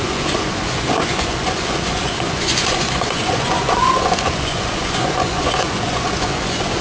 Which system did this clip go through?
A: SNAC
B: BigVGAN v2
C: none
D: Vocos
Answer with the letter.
D